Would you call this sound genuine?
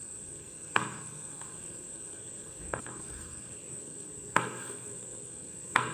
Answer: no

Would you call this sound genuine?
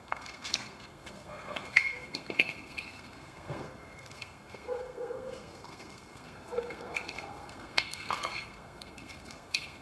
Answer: no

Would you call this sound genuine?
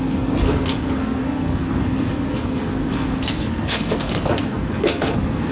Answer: no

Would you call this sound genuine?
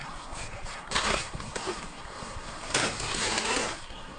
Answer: no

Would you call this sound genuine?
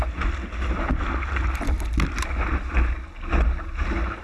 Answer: yes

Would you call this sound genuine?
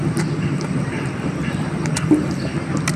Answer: yes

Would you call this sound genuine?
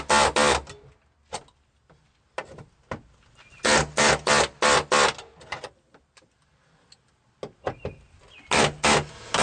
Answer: yes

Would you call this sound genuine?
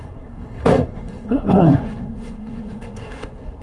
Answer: no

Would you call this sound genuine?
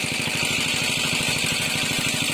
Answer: yes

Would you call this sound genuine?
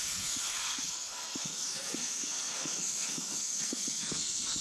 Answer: no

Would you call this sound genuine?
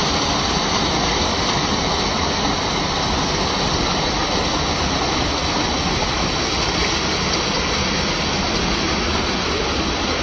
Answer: yes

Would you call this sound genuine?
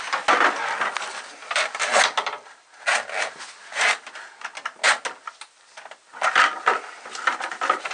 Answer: yes